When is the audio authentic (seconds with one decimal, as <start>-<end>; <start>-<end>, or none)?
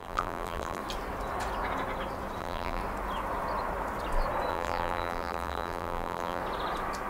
0.8-2.4; 2.8-4.5; 6.4-7.1